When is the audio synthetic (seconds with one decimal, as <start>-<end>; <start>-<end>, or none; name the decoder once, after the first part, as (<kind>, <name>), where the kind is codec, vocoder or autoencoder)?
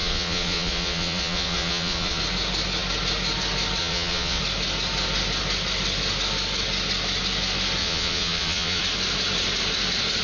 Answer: 0.0-2.2 (vocoder, Vocos); 3.8-4.4; 7.8-8.8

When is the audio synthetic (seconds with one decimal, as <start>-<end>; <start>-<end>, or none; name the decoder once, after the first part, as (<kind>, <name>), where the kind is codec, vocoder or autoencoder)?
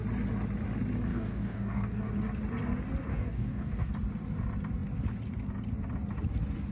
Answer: 1.1-2.1 (codec, DAC); 3.1-3.9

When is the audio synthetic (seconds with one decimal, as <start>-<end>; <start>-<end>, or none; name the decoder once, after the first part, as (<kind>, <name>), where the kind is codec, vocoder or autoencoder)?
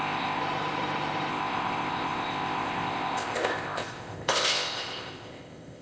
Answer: 0.0-0.4 (codec, ZipCodec); 1.3-5.8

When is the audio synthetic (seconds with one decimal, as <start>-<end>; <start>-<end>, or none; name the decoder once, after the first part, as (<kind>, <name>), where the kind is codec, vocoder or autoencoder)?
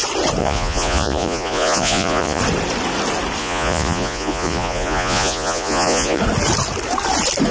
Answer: 0.4-2.4 (vocoder, Vocos); 3.4-6.2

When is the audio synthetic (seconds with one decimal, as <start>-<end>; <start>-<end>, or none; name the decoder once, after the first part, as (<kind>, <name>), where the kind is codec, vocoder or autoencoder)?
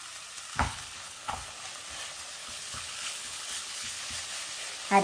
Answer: 0.5-1.5 (codec, HILCodec); 2.4-4.0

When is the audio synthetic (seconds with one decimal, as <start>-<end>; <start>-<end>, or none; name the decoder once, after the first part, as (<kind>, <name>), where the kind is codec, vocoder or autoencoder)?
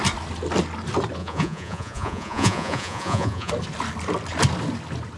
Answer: 1.2-3.5 (vocoder, Vocos)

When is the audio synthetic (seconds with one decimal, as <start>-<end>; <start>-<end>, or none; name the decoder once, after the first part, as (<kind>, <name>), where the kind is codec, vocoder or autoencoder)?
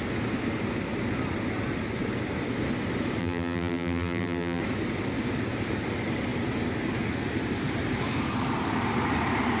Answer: 3.2-4.6 (vocoder, BigVGAN v2)